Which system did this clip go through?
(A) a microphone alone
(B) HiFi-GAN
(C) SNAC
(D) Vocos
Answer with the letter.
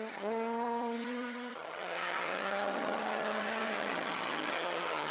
B